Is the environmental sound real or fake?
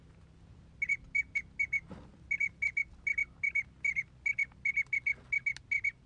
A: real